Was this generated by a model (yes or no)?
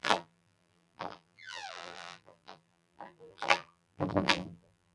yes